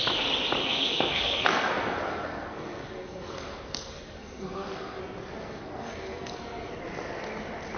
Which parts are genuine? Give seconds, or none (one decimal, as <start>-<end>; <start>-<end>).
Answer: 0.0-0.6; 5.0-5.4; 6.8-7.8